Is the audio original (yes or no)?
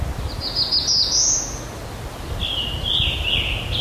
yes